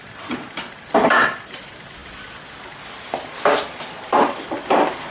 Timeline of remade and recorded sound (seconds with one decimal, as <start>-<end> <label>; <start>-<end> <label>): 0.0-0.5 remade; 0.5-5.1 recorded